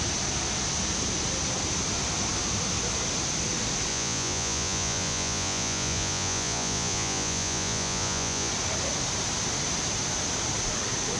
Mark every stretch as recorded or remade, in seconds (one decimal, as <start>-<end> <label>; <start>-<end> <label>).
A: 0.0-3.9 recorded; 3.9-8.5 remade; 8.5-11.2 recorded